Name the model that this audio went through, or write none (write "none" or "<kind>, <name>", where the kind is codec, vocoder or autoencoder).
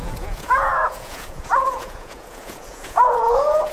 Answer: vocoder, Vocos